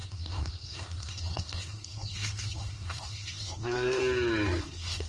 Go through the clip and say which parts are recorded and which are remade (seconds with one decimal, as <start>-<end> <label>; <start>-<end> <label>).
0.0-4.0 remade; 4.0-4.6 recorded; 4.6-5.1 remade